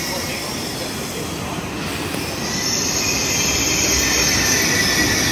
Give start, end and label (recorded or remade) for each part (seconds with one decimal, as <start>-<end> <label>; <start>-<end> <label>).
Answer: 0.0-5.3 remade